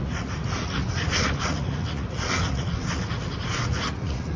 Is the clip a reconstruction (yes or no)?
yes